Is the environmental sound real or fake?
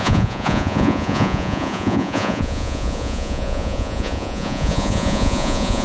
fake